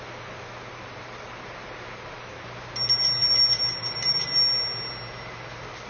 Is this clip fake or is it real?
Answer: real